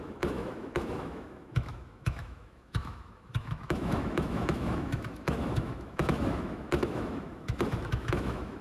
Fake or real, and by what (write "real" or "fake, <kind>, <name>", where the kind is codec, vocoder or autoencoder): fake, autoencoder, DAC-VAE